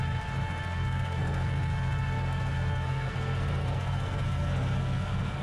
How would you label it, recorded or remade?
remade